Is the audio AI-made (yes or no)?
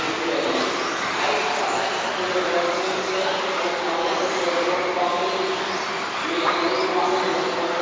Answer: no